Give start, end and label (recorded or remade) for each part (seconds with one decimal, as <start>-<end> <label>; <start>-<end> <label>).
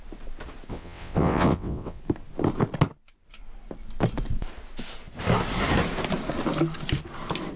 0.0-0.7 recorded; 0.7-2.0 remade; 2.0-7.6 recorded